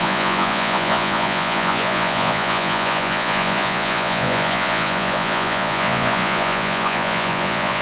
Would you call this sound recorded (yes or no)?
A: no